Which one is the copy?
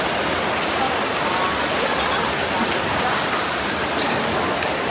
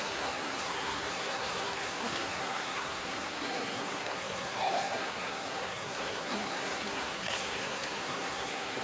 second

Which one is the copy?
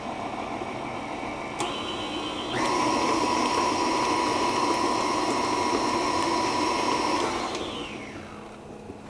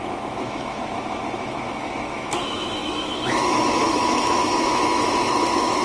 second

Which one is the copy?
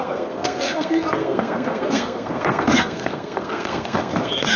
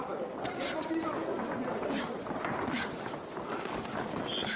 first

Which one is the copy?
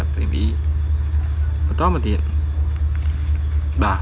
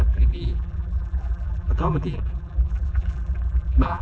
second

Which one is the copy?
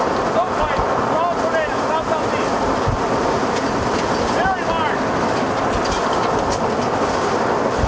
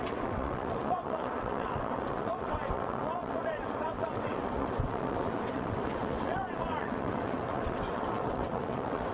second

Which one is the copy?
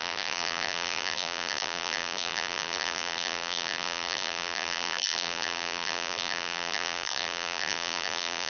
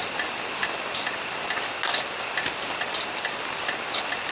first